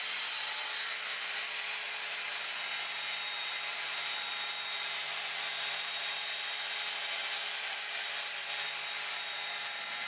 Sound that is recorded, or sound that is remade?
remade